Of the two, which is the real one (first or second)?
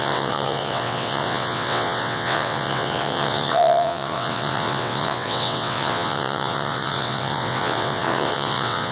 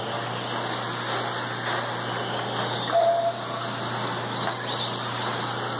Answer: second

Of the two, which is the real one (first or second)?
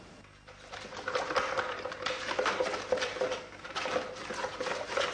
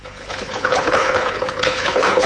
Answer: first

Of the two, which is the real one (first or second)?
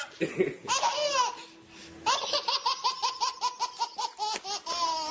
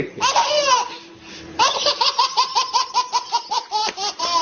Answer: first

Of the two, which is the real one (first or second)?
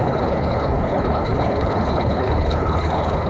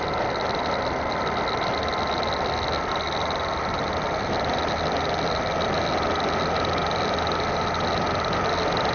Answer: second